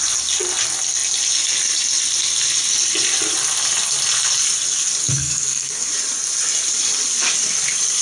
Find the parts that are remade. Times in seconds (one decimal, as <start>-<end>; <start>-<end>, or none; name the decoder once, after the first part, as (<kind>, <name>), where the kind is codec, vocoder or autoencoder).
5.0-5.8 (codec, SNAC)